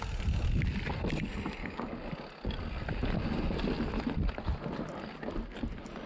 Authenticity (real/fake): real